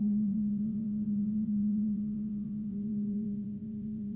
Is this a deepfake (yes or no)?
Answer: yes